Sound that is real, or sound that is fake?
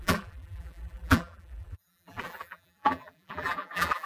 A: fake